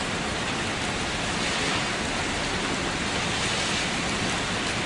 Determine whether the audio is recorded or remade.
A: recorded